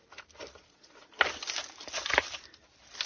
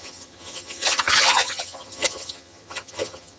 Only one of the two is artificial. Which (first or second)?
second